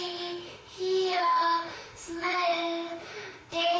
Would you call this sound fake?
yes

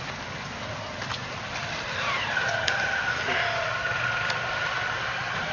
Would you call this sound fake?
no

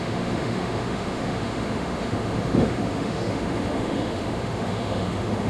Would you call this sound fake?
yes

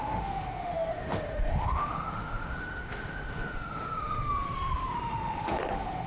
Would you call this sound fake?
yes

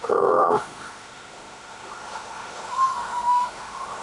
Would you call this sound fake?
yes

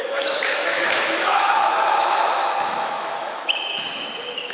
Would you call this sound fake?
yes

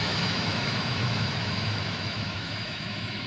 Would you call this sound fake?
yes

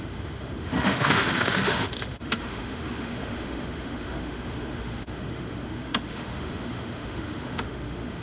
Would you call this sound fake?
yes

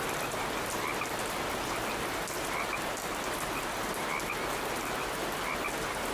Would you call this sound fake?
no